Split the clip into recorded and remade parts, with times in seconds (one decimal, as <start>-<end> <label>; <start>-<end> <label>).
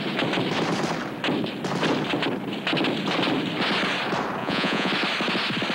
0.0-4.4 recorded; 4.4-4.9 remade; 4.9-5.7 recorded